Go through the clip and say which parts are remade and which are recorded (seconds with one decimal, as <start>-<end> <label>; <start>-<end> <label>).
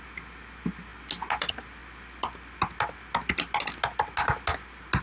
0.0-5.0 recorded